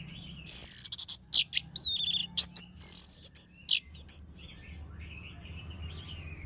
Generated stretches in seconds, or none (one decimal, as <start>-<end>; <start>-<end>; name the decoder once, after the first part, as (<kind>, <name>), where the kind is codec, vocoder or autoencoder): none